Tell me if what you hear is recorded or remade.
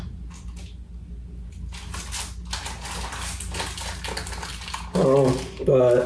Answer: recorded